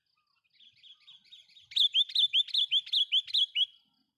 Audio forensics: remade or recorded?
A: recorded